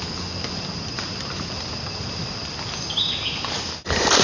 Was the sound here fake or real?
real